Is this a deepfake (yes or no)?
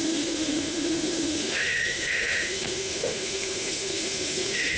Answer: yes